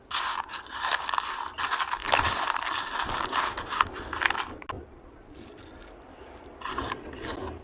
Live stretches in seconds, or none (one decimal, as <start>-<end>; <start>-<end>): 0.0-7.6

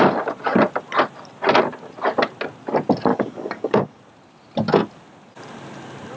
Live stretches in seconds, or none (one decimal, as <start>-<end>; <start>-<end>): 0.0-3.1; 4.0-6.2

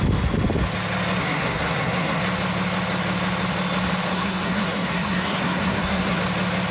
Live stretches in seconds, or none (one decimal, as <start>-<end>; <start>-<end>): 0.0-1.2; 2.2-4.1; 6.2-6.7

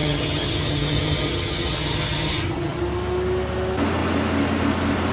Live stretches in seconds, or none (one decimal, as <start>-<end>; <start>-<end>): 2.8-5.1

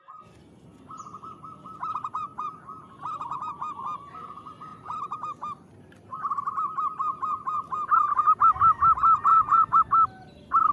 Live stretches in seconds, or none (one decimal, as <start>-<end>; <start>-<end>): 0.0-9.3; 9.8-10.7

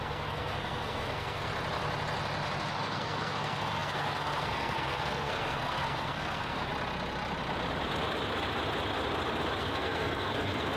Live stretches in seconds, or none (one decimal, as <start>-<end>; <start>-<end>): 1.5-2.7; 6.7-9.6